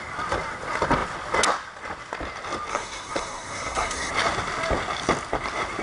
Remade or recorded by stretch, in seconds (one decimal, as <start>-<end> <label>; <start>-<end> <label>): 0.0-2.7 recorded; 2.7-4.1 remade; 4.1-5.8 recorded